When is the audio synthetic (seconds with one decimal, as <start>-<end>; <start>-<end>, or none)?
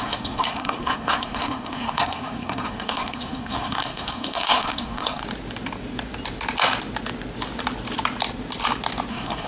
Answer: 0.0-5.2; 9.1-9.5